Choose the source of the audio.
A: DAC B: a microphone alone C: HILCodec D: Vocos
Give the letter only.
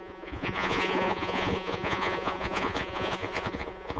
D